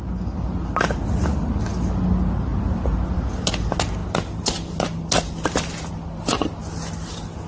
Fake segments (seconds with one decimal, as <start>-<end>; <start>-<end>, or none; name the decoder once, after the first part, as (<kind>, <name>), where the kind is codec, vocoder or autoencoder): none